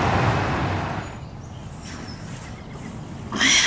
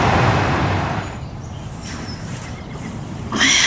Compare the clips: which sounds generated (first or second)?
second